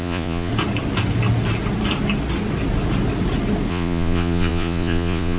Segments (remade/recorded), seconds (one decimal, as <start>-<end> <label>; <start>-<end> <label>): 0.0-0.5 remade; 0.5-3.7 recorded; 3.7-5.4 remade